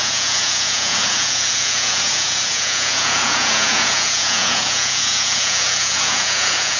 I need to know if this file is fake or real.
fake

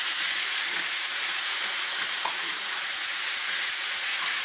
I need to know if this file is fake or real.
fake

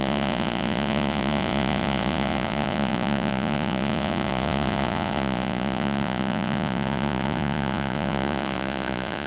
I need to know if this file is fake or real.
fake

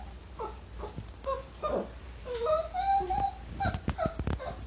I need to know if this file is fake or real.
real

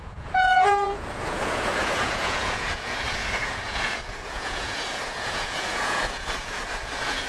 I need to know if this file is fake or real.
fake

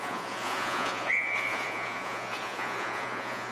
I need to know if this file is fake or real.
fake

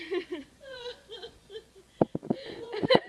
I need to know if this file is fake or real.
fake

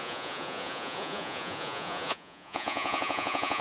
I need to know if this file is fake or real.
fake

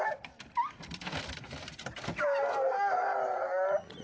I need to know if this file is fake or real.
real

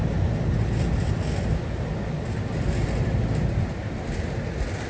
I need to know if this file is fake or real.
real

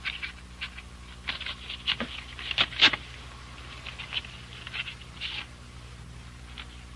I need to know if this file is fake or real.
real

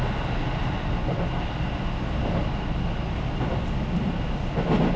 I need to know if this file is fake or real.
real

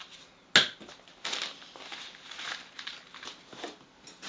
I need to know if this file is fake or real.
real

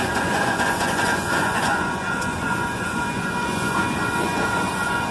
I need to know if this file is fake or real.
fake